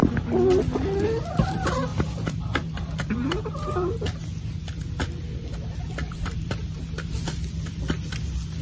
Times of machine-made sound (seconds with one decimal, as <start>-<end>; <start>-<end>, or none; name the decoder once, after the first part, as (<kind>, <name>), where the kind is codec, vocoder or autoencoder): 1.9-3.4 (vocoder, BigVGAN v2); 6.0-6.8